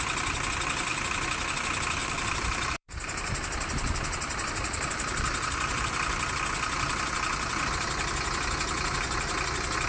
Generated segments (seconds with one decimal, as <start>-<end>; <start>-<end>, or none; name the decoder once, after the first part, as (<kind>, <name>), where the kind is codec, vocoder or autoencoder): 2.0-5.9 (vocoder, BigVGAN v2)